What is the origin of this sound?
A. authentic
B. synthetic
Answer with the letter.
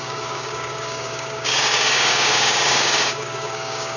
B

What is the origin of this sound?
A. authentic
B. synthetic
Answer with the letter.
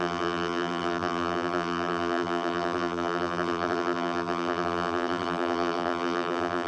B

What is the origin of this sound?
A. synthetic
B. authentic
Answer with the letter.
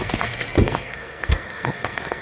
A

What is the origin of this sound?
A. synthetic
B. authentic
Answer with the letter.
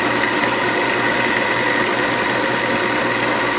B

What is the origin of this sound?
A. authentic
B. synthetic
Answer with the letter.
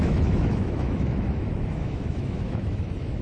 B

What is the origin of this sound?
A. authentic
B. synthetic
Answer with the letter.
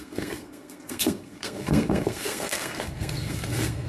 B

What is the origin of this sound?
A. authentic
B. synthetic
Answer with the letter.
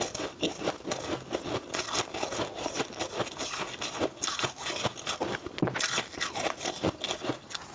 A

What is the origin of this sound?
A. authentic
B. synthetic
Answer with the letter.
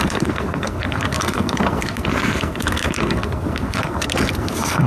B